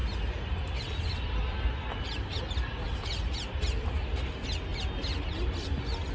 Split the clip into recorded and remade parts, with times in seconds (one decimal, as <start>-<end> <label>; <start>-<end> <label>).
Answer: 0.0-6.1 recorded